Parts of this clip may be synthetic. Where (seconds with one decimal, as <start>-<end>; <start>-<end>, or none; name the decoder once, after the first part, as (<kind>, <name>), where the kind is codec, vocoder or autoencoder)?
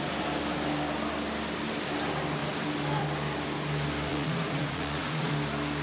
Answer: 4.1-5.3 (vocoder, Vocos)